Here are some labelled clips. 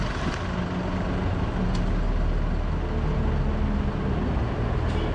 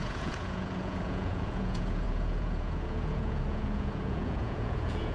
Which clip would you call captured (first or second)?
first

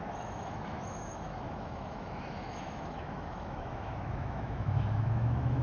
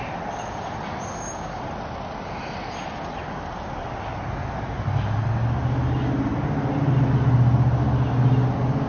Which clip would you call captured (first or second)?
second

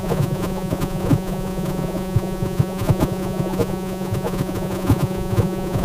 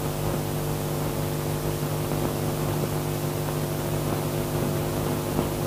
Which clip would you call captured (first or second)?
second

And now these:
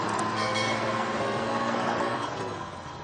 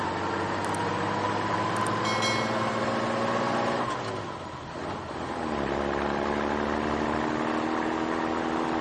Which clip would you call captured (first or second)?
second